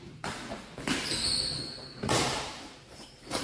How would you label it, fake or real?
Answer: fake